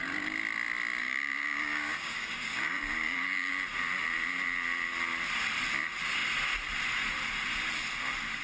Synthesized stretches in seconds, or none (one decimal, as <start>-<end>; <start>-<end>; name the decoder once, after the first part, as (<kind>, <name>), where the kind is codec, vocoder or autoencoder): 1.0-3.5 (codec, DAC)